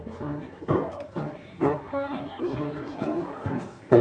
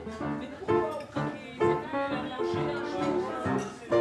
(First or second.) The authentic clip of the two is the second